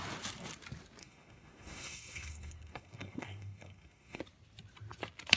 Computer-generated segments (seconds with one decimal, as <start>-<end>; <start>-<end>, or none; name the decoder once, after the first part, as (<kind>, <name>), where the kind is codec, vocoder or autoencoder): 1.0-4.2 (codec, SNAC)